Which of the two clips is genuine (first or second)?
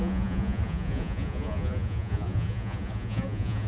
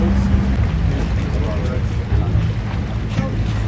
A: second